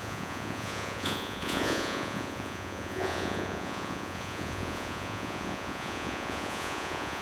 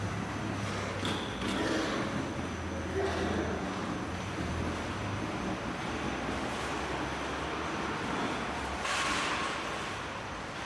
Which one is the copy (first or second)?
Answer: first